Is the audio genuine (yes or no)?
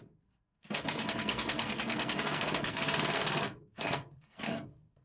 no